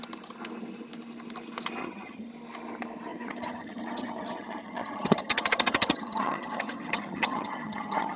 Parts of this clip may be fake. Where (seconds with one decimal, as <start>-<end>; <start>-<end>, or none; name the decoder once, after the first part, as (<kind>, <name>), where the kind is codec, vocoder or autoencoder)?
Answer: 1.8-2.3 (vocoder, HiFi-GAN); 3.1-8.2